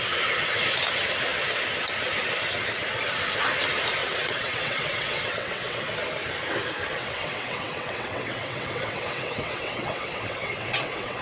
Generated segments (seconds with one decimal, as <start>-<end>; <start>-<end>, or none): 4.0-5.8; 7.0-11.2